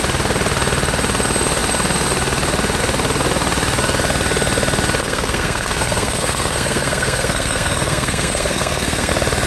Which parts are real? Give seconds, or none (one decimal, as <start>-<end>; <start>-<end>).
0.0-5.0; 9.1-9.5